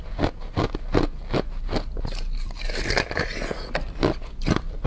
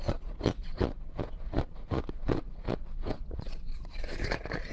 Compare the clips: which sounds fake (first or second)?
second